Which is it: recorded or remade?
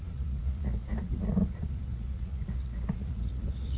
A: remade